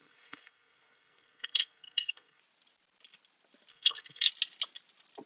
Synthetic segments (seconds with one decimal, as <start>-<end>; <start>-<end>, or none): 0.0-2.4; 3.7-4.3